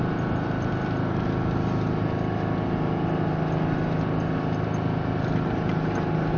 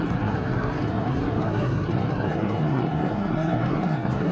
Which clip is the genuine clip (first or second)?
first